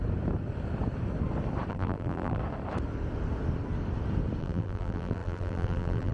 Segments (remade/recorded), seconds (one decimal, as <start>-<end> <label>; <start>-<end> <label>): 0.0-1.7 recorded; 1.7-2.4 remade; 2.4-4.4 recorded; 4.4-6.1 remade